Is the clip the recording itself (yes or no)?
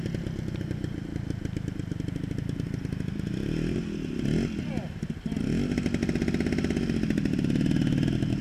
yes